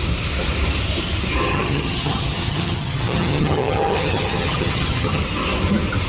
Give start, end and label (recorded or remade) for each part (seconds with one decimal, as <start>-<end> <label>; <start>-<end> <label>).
0.0-1.5 recorded; 1.5-5.2 remade; 5.2-6.1 recorded